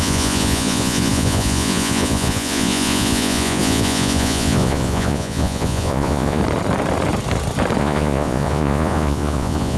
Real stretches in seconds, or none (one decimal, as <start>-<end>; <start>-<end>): 6.4-7.8